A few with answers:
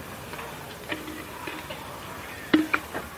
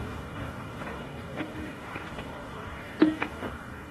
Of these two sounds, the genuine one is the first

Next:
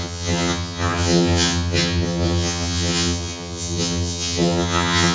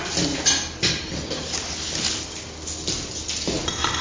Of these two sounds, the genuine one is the second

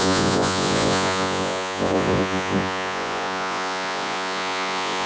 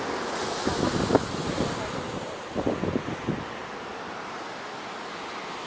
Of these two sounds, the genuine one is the second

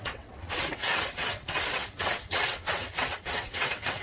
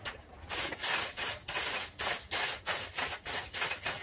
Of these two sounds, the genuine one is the second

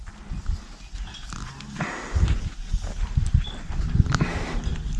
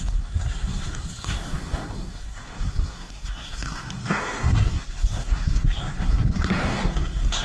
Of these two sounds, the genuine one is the first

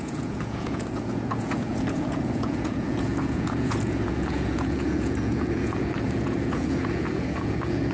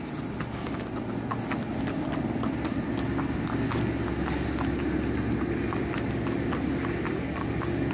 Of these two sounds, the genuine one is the second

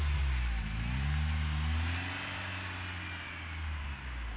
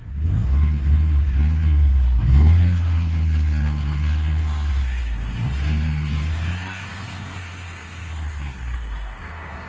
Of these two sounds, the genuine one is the first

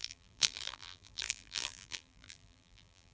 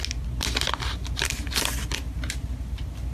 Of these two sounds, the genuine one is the second